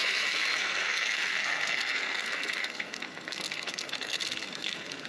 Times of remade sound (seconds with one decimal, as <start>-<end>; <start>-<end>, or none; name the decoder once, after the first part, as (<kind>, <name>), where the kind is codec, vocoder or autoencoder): 0.0-5.1 (codec, SNAC)